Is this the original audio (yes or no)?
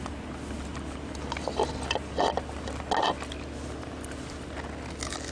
yes